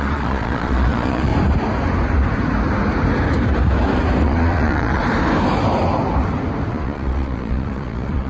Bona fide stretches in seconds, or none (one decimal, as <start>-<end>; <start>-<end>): 1.3-4.2; 5.0-6.7